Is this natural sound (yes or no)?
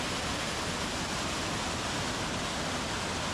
yes